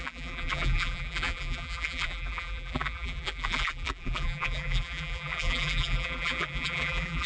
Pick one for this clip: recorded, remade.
remade